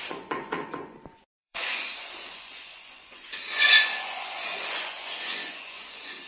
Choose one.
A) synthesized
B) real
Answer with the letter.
A